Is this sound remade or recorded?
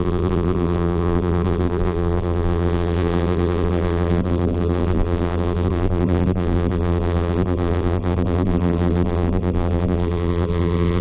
remade